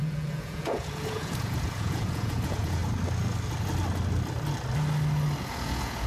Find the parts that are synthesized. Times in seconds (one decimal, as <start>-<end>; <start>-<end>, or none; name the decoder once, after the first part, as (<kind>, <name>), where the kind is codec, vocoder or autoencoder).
0.0-2.8 (vocoder, Vocos); 5.4-6.1